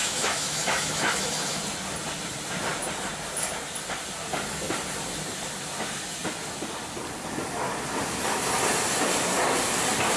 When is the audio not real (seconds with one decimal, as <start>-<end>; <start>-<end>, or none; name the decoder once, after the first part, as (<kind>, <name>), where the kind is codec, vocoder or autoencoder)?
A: 0.0-1.6 (autoencoder, DAC-VAE)